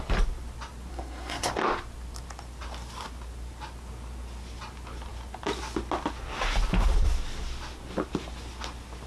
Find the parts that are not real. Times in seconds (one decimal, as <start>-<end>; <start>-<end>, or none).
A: 0.9-1.5